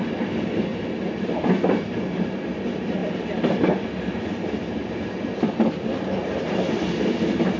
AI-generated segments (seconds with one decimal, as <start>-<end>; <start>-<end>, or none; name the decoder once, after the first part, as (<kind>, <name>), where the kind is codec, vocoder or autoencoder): none